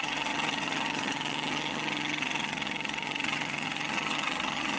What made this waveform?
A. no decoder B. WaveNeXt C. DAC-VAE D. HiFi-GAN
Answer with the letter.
D